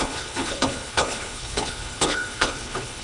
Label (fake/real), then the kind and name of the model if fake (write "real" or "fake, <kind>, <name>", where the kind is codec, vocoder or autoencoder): fake, codec, HILCodec